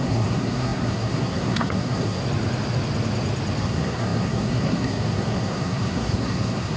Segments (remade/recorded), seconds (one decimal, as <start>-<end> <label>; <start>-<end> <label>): 0.0-2.2 remade; 2.2-3.6 recorded; 3.6-6.8 remade